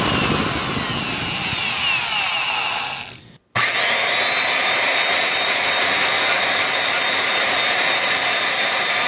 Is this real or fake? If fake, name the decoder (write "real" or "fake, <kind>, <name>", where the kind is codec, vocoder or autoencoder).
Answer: real